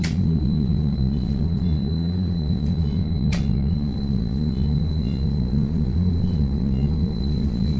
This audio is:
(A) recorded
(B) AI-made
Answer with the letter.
B